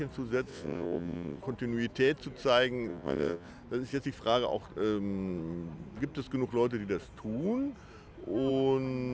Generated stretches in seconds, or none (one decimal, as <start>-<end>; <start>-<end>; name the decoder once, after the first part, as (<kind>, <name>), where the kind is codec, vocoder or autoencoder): 0.5-1.4 (vocoder, WaveNeXt); 2.9-3.5